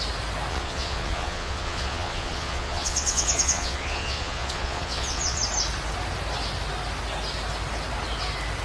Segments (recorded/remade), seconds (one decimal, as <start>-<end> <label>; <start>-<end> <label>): 0.0-0.5 recorded; 0.5-5.4 remade; 5.4-8.6 recorded

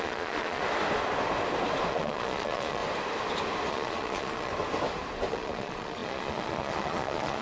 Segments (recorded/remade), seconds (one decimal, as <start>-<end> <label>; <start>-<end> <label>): 0.0-0.6 remade; 0.6-1.9 recorded; 1.9-2.8 remade; 2.8-3.7 recorded; 3.7-4.5 remade; 4.5-5.3 recorded; 5.3-7.4 remade

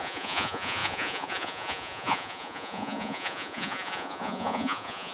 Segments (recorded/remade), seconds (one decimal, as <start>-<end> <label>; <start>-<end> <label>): 0.0-5.1 remade

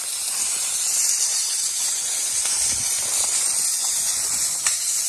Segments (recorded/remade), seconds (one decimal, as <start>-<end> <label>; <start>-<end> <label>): 0.0-1.3 recorded; 1.3-2.6 remade; 2.6-3.7 recorded; 3.7-5.1 remade

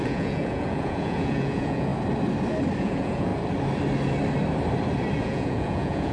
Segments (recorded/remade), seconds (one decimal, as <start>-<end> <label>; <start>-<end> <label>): 0.0-1.9 remade; 1.9-2.8 recorded; 2.8-3.3 remade; 3.3-5.2 recorded; 5.2-6.1 remade

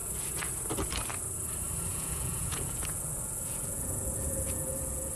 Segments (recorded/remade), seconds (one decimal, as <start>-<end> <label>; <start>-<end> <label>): 0.0-0.5 remade; 0.5-1.9 recorded; 1.9-5.2 remade